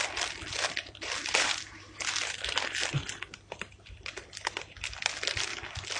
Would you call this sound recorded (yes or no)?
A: no